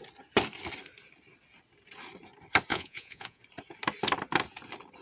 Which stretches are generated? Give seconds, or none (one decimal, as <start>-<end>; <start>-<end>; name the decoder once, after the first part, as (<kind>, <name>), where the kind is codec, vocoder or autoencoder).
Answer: 2.7-3.4 (vocoder, Vocos)